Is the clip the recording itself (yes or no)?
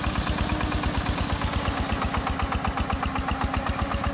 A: yes